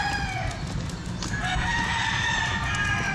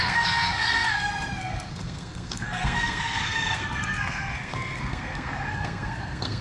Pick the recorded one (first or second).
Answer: first